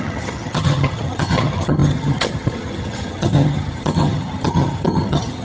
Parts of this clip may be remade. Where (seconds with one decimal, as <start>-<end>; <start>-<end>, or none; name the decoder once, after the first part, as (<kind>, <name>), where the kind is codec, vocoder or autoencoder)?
0.0-5.4 (vocoder, HiFi-GAN)